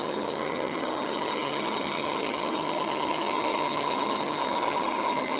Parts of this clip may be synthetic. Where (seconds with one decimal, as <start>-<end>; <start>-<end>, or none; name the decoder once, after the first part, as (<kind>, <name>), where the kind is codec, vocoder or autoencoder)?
0.0-5.4 (vocoder, HiFi-GAN)